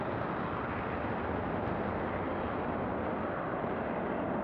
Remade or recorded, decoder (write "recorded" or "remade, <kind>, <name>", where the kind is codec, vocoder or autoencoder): recorded